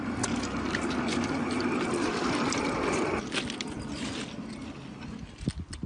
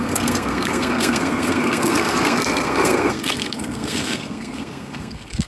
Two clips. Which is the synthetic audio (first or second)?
second